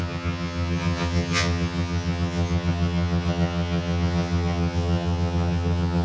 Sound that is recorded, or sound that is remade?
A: remade